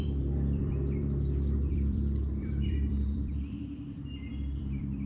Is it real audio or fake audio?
fake